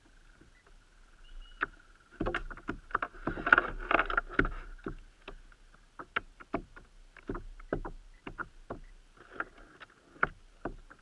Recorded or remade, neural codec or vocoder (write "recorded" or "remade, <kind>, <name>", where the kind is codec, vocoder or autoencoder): recorded